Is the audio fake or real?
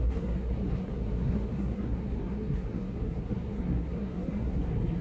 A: fake